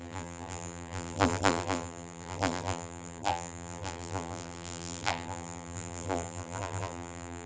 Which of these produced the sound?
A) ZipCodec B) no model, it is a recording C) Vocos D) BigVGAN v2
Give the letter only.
D